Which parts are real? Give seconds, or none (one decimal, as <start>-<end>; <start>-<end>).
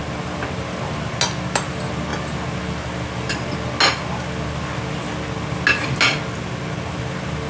0.0-7.5